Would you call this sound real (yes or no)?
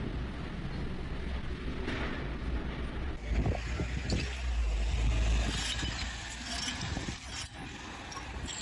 yes